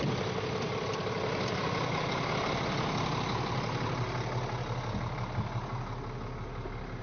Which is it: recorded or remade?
recorded